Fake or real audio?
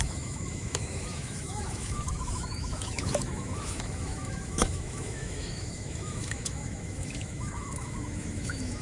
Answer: fake